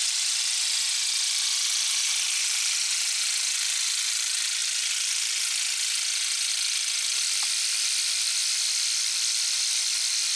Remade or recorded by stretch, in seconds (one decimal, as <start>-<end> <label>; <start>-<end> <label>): 0.0-10.4 recorded